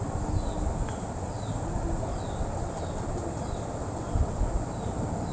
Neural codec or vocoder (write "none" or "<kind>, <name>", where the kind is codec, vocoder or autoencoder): none